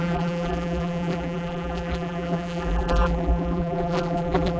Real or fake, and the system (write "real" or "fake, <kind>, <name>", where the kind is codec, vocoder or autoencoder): fake, vocoder, BigVGAN v2